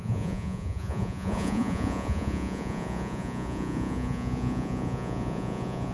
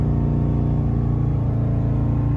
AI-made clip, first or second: first